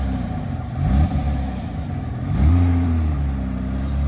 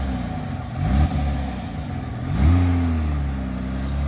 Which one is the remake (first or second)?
first